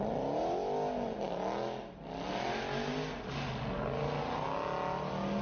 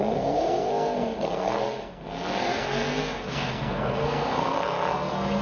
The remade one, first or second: second